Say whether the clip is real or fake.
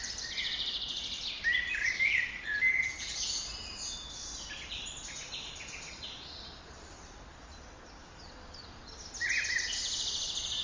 real